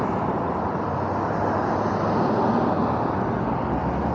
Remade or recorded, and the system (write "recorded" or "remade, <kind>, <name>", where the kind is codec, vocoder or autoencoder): recorded